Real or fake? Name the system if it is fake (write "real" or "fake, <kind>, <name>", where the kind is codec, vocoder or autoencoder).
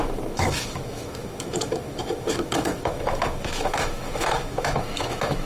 fake, autoencoder, DAC-VAE